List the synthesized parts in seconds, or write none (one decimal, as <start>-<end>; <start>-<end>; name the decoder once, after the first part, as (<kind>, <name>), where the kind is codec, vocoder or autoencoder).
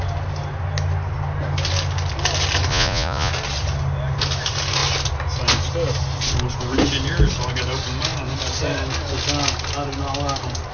2.7-3.3 (vocoder, Vocos)